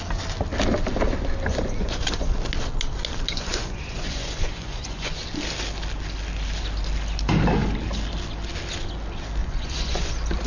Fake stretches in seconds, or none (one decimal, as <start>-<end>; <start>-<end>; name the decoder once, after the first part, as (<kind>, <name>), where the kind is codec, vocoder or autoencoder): 1.5-2.4 (vocoder, Vocos); 3.3-5.2; 9.4-10.1